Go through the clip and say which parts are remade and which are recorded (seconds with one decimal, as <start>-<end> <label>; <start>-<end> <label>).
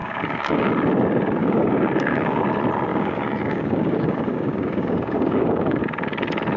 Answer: 0.0-0.7 remade; 0.7-1.4 recorded; 1.4-2.4 remade; 2.4-2.9 recorded; 2.9-5.8 remade; 5.8-6.6 recorded